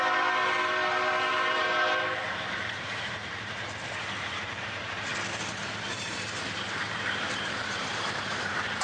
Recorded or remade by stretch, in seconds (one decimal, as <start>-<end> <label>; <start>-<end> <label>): 0.0-5.1 remade; 5.1-6.0 recorded; 6.0-8.8 remade